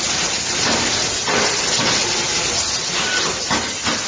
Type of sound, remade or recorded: recorded